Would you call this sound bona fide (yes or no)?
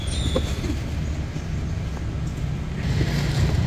yes